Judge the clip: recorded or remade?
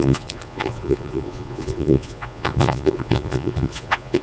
remade